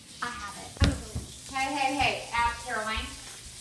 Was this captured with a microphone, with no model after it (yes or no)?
yes